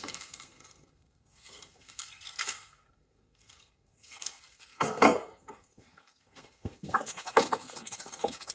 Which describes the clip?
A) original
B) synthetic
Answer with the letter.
B